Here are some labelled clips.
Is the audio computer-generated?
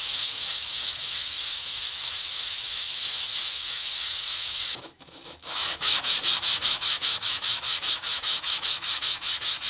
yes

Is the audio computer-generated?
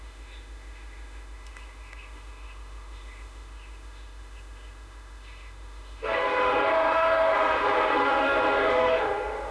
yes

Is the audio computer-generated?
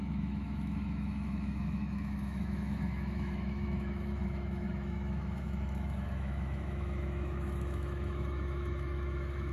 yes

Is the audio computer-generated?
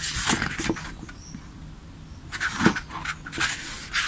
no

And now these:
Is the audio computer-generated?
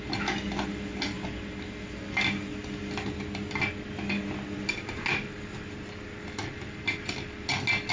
no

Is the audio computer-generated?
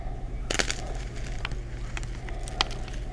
no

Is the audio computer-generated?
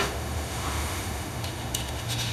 yes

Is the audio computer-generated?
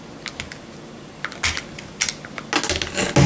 no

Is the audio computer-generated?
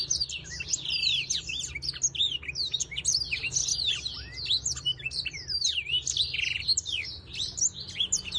no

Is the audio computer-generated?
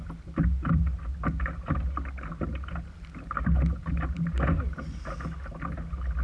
no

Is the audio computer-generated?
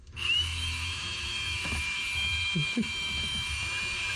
yes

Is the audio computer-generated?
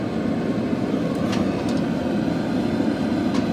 no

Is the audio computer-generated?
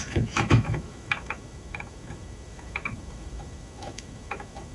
yes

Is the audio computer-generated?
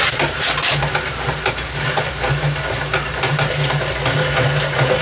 no